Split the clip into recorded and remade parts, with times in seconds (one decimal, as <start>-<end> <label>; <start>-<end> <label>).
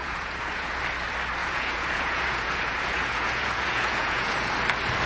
0.0-0.8 remade; 0.8-1.4 recorded; 1.4-4.5 remade; 4.5-5.1 recorded